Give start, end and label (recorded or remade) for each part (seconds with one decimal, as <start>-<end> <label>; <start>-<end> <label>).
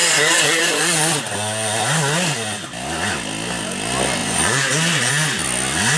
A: 0.0-1.2 remade; 1.2-4.2 recorded; 4.2-5.1 remade; 5.1-6.0 recorded